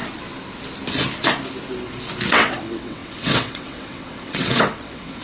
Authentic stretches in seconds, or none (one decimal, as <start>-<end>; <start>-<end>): 0.0-2.3